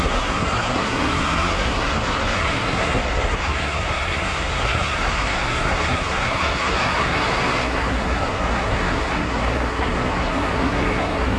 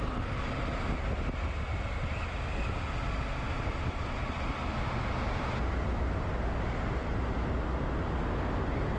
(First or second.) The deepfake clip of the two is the first